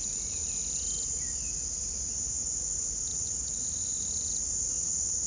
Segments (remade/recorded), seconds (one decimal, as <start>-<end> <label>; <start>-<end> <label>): 0.0-0.4 remade; 0.4-2.3 recorded; 2.3-5.3 remade